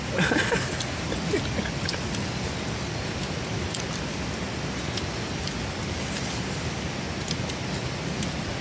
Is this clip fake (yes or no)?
no